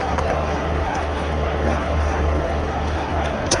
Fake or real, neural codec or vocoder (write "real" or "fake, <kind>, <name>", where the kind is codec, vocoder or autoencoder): fake, codec, SNAC